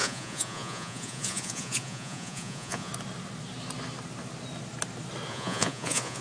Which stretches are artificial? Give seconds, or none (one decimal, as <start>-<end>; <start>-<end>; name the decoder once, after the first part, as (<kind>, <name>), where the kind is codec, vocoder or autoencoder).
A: 0.0-2.9 (vocoder, Vocos); 5.3-6.2